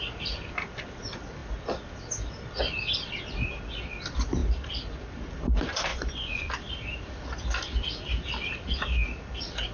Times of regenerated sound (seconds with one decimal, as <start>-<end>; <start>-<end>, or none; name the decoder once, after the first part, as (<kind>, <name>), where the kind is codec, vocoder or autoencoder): 5.9-6.5 (vocoder, Vocos)